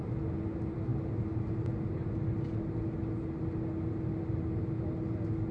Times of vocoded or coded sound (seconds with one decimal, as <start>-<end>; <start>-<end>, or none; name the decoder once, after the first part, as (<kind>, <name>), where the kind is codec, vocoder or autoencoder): none